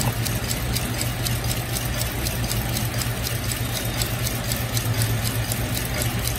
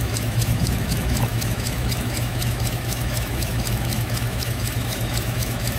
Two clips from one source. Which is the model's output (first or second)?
second